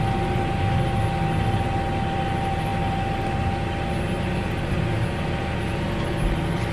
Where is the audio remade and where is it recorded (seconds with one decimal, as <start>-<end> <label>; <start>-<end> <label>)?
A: 0.0-6.7 recorded